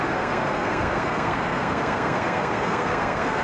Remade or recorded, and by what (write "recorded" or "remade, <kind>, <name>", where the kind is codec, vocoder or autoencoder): remade, codec, SNAC